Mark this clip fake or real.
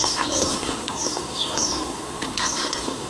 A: fake